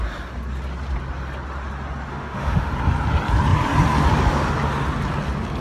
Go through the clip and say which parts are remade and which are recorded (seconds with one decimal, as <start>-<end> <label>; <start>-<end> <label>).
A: 0.0-2.1 recorded; 2.1-2.7 remade; 2.7-5.6 recorded